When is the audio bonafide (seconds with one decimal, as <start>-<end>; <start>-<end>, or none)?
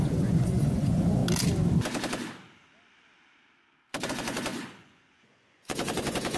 1.2-4.1